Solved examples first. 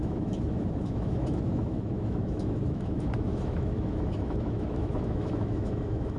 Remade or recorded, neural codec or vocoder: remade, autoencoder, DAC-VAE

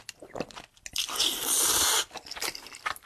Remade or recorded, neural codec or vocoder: remade, vocoder, BigVGAN v2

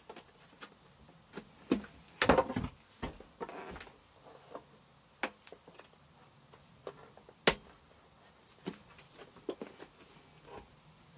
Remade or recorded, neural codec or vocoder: recorded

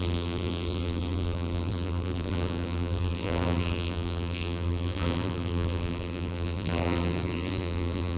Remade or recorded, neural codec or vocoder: remade, vocoder, BigVGAN v2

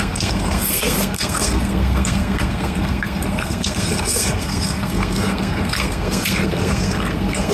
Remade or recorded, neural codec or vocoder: remade, codec, SNAC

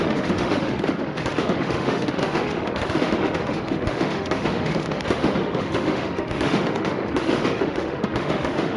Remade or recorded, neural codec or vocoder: remade, autoencoder, DAC-VAE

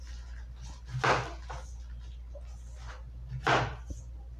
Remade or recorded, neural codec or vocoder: recorded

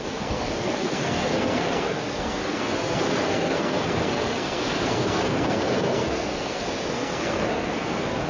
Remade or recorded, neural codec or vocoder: remade, codec, SNAC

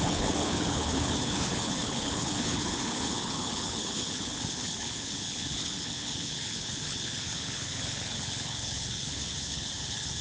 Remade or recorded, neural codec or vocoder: remade, codec, HILCodec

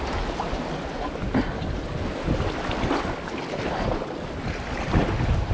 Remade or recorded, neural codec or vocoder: recorded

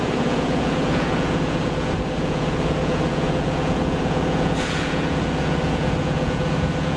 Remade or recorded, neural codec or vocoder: remade, vocoder, Vocos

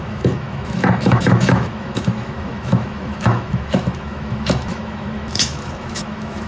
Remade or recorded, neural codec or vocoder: remade, autoencoder, DAC-VAE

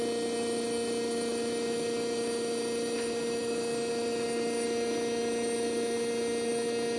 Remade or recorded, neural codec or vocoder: recorded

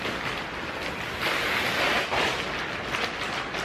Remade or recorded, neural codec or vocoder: recorded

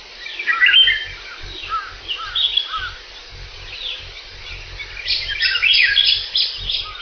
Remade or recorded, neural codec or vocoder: recorded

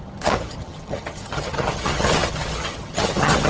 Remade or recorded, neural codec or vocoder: remade, vocoder, HiFi-GAN